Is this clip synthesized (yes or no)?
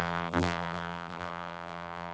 yes